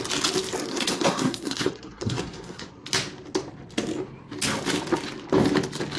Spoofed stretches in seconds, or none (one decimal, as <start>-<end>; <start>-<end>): 0.7-2.7